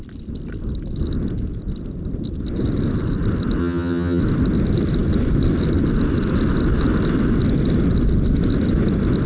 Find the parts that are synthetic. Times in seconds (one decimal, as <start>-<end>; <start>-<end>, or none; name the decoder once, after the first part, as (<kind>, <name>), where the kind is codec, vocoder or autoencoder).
3.6-4.2 (vocoder, HiFi-GAN)